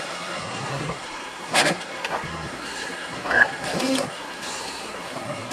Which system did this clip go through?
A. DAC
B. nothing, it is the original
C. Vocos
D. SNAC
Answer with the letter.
D